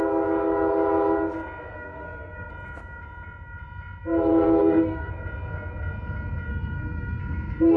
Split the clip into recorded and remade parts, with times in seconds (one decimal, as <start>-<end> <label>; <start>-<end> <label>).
0.0-1.7 recorded; 1.7-2.5 remade; 2.5-4.3 recorded; 4.3-5.1 remade; 5.1-6.5 recorded; 6.5-7.2 remade; 7.2-7.8 recorded